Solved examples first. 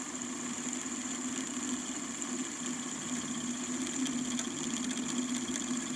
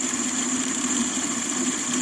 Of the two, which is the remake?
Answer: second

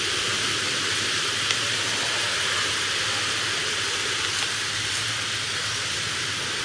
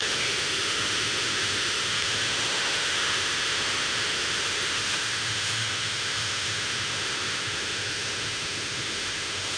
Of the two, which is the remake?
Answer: second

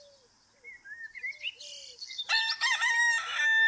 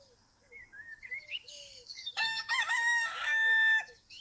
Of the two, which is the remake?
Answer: second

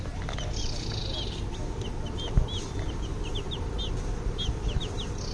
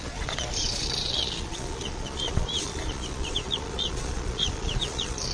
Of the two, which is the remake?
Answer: second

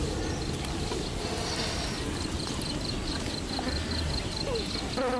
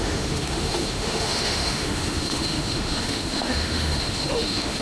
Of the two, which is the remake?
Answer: second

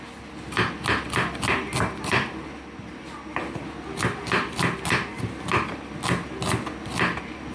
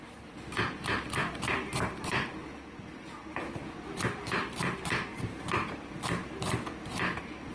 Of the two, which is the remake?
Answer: second